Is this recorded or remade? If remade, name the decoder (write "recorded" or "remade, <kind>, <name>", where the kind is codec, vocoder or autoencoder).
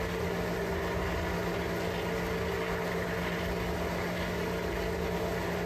recorded